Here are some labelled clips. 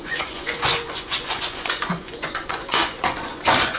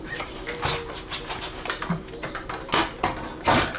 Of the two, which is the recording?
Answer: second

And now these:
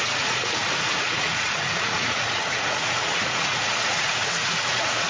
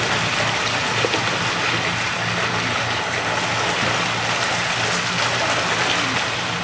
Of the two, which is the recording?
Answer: second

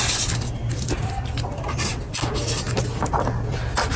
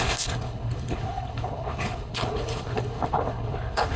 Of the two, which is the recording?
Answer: first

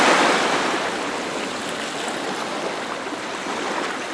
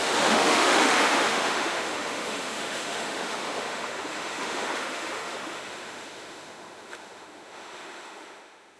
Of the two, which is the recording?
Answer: first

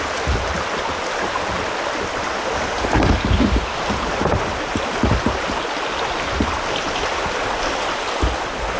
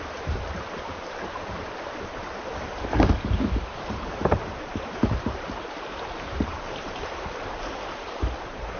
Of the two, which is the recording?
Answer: first